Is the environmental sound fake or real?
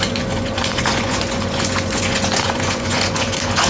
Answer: fake